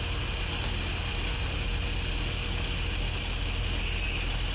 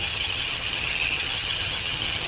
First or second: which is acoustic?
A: first